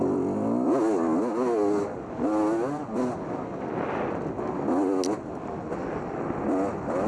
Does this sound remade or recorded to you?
recorded